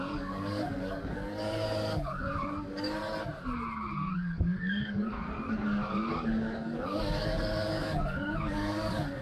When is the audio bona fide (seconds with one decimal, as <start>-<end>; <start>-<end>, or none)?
3.0-3.9